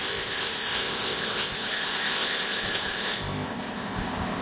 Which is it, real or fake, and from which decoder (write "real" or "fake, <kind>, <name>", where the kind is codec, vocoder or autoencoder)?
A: fake, codec, ZipCodec